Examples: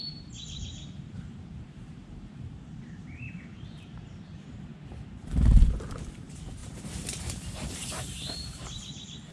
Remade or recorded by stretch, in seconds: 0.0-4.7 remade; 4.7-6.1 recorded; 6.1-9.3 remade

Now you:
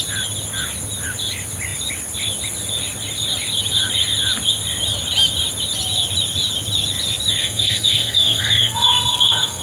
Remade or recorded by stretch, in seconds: 0.0-7.4 recorded; 7.4-9.6 remade